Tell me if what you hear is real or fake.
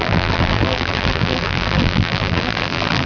fake